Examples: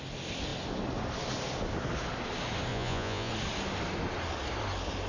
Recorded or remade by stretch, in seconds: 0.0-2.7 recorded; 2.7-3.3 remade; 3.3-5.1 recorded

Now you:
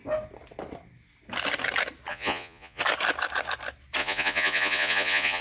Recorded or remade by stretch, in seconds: 0.0-2.1 recorded; 2.1-2.8 remade; 2.8-4.0 recorded; 4.0-5.4 remade

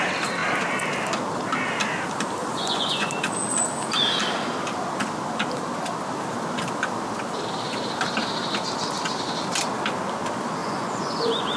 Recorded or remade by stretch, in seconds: 0.0-2.4 recorded; 2.4-3.1 remade; 3.1-10.6 recorded; 10.6-11.6 remade